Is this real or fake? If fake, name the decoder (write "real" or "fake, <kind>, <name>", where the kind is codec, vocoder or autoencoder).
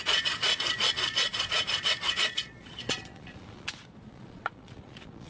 fake, vocoder, Vocos